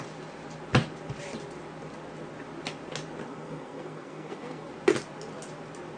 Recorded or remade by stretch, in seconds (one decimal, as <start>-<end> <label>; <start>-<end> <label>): 0.0-3.2 recorded; 3.2-4.7 remade; 4.7-6.0 recorded